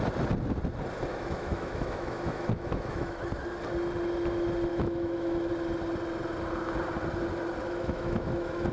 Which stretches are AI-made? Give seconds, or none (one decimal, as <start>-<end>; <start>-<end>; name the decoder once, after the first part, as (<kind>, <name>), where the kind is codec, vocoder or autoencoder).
1.1-3.2 (autoencoder, DAC-VAE); 4.7-5.5; 7.6-8.7

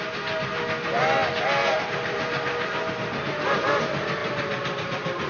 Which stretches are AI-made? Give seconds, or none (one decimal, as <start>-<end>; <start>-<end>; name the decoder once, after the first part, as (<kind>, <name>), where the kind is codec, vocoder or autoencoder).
1.6-2.9 (vocoder, BigVGAN v2); 4.2-5.3

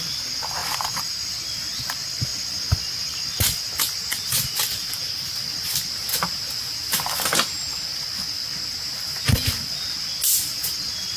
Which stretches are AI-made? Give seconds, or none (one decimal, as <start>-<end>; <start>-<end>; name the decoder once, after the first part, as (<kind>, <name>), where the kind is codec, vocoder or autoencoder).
none

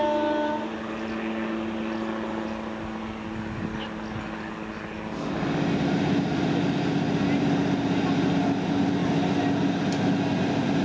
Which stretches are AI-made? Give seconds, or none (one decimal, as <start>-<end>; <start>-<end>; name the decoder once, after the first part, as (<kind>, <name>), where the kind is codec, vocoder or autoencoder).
none

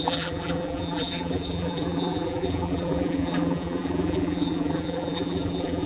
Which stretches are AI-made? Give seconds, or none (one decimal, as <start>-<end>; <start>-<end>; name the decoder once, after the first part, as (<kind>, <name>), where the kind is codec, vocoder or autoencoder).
0.0-5.9 (vocoder, BigVGAN v2)

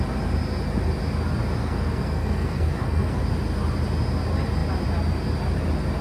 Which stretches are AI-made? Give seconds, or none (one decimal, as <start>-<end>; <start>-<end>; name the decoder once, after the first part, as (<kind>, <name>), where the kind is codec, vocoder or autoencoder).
1.6-3.2 (codec, SNAC)

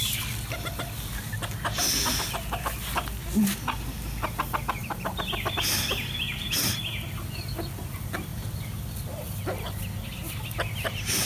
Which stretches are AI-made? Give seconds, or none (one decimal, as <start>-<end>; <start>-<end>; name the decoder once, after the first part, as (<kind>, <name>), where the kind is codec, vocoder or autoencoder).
4.8-5.5 (vocoder, BigVGAN v2)

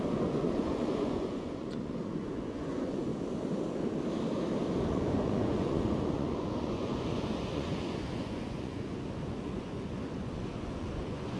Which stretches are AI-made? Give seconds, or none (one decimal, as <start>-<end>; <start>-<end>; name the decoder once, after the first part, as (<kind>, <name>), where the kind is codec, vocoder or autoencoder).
0.0-3.1 (vocoder, Vocos); 4.9-11.4